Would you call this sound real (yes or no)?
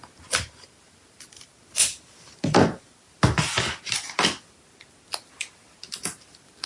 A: yes